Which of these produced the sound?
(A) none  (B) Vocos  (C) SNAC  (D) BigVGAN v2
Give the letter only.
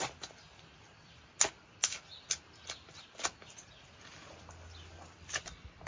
A